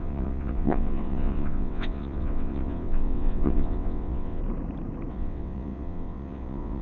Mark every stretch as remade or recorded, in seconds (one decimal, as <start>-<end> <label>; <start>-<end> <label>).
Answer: 0.0-4.4 remade; 4.4-5.1 recorded; 5.1-6.8 remade